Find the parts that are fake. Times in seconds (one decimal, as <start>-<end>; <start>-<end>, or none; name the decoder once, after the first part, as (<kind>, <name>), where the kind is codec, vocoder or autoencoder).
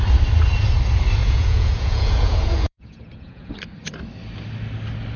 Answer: 1.2-3.5 (vocoder, Vocos)